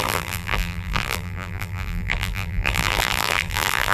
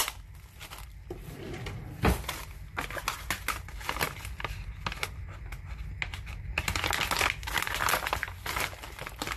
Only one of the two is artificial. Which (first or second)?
first